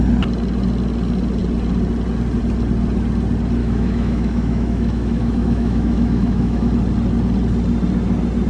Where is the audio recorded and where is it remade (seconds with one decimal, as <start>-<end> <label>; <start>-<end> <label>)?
0.0-3.6 recorded; 3.6-6.7 remade; 6.7-8.5 recorded

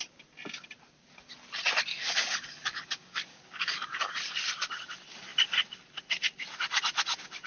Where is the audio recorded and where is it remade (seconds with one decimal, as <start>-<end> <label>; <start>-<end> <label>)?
0.0-1.9 recorded; 1.9-4.1 remade; 4.1-7.5 recorded

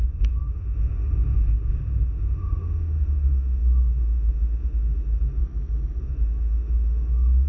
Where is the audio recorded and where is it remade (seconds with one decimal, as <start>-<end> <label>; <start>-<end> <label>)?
0.0-5.4 remade; 5.4-6.0 recorded; 6.0-7.5 remade

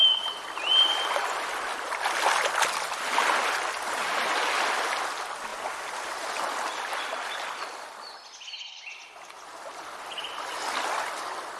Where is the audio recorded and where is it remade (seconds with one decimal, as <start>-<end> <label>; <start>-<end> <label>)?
0.0-1.7 recorded; 1.7-2.3 remade; 2.3-11.6 recorded